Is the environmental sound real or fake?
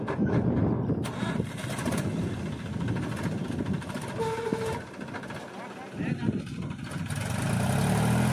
real